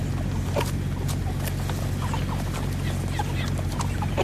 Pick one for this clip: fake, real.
real